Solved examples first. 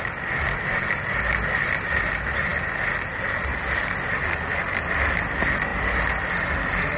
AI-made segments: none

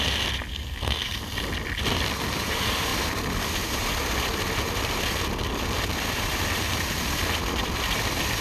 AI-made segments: 0.5-1.2

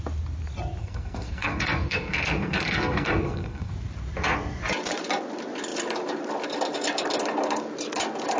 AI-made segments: 0.8-3.7

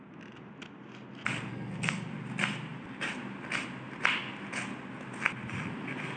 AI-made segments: 1.5-2.1

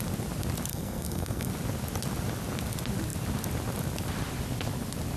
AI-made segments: 0.7-1.5

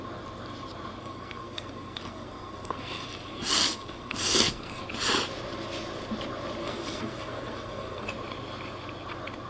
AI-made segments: 1.0-4.8; 6.6-8.1

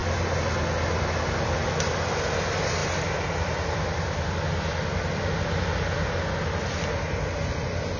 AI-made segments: none